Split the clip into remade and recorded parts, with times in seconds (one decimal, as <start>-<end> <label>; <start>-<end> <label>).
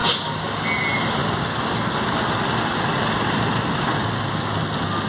0.0-5.1 recorded